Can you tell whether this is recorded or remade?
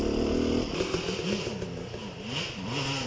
recorded